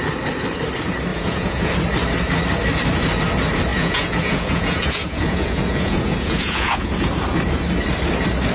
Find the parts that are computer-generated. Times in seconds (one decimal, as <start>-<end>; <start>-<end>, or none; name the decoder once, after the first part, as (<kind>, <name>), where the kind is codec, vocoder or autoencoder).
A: 1.1-1.7 (vocoder, Vocos); 3.7-7.1